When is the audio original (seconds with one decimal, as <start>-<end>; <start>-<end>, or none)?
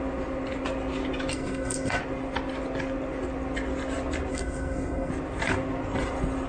0.0-1.3; 2.0-4.3; 5.1-6.5